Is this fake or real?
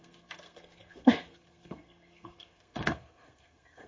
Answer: fake